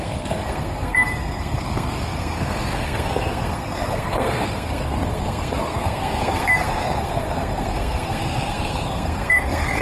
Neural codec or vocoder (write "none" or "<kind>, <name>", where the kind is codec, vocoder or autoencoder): codec, SNAC